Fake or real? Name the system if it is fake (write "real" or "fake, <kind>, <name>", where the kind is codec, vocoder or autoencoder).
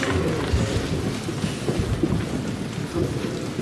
real